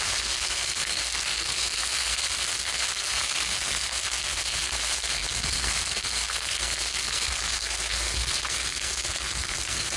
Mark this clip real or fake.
fake